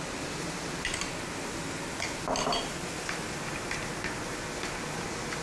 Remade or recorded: recorded